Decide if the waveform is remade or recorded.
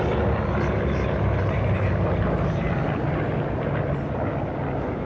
recorded